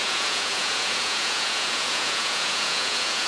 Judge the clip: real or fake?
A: fake